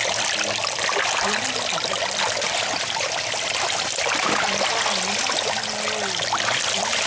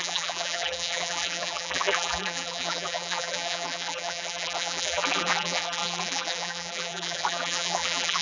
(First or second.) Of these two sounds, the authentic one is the first